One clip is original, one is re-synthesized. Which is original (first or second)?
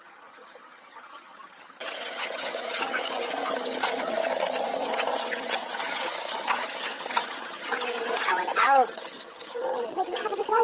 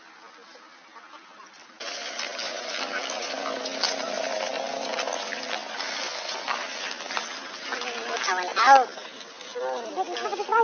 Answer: second